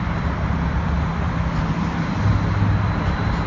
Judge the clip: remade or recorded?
recorded